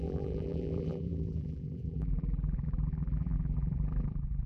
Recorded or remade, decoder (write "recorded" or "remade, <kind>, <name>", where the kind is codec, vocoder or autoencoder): remade, vocoder, BigVGAN v2